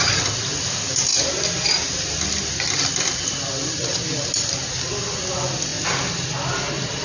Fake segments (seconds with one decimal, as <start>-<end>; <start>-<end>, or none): none